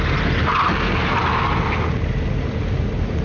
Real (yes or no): yes